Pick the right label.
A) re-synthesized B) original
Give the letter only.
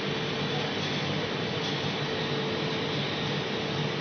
B